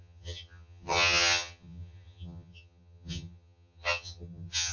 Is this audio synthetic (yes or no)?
yes